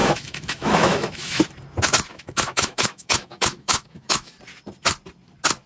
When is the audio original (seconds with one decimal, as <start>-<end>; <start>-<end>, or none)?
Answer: 1.4-2.1; 4.3-5.7